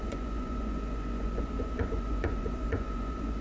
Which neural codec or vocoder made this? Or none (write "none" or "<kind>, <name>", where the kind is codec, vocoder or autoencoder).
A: vocoder, Vocos